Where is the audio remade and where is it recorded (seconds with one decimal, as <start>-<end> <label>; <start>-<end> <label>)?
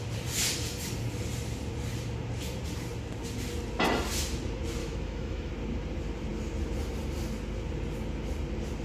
0.0-4.8 recorded; 4.8-5.5 remade; 5.5-8.8 recorded